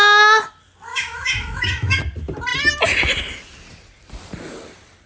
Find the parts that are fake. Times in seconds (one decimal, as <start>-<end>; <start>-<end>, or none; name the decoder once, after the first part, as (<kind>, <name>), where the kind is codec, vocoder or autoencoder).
0.9-2.0 (autoencoder, DAC-VAE)